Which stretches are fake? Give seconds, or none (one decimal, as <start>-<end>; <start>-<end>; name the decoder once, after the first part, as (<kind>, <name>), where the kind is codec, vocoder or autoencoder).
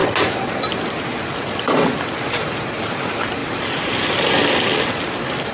none